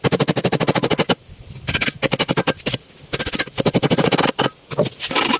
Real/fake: real